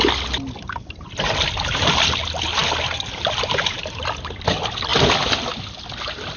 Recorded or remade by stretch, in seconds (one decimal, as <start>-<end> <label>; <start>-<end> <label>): 0.0-6.4 recorded